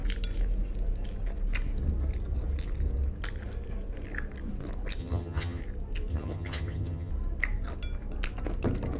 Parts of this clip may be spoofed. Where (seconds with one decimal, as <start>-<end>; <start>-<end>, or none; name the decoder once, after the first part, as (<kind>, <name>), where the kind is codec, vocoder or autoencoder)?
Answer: 5.0-5.6 (vocoder, HiFi-GAN); 6.1-7.1